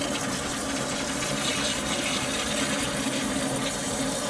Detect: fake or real real